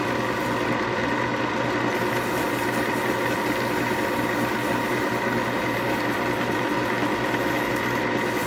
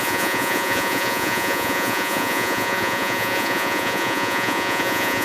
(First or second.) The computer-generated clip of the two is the second